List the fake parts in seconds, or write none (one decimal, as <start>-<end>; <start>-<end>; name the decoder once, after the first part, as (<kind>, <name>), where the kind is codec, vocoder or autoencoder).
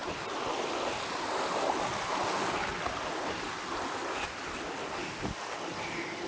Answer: none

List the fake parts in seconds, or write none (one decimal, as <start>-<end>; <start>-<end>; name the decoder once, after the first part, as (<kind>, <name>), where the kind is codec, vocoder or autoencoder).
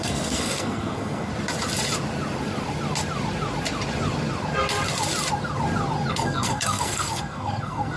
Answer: 0.0-1.3 (codec, SNAC); 6.1-8.0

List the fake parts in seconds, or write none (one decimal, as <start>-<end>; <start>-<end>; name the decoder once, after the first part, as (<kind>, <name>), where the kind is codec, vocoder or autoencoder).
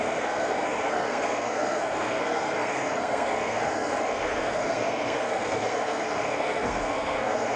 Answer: 0.0-7.6 (codec, SNAC)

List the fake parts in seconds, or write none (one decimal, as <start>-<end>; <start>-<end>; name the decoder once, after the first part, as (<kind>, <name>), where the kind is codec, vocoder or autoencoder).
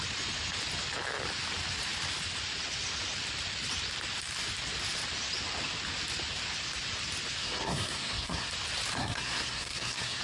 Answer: 7.4-8.5 (codec, SNAC); 9.0-10.2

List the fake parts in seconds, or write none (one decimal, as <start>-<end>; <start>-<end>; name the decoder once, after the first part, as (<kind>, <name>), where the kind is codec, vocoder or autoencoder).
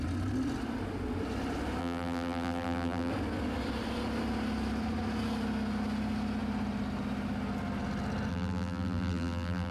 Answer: 1.8-3.1 (vocoder, BigVGAN v2); 8.3-9.7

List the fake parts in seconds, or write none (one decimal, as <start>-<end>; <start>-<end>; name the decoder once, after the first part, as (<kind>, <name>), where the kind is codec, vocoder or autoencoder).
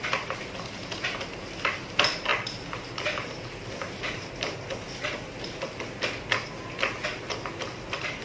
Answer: 2.3-3.7 (vocoder, BigVGAN v2)